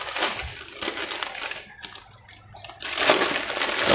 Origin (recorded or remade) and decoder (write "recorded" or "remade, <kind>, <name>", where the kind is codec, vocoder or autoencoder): recorded